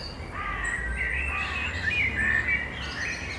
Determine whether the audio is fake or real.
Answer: real